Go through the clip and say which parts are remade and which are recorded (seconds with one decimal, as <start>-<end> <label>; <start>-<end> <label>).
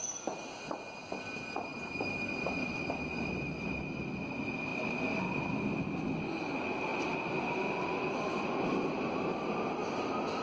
0.0-10.4 recorded